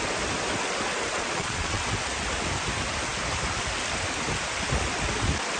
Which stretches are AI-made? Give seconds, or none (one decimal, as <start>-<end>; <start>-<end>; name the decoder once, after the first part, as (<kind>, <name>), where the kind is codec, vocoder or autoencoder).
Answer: 1.1-1.8 (vocoder, Vocos)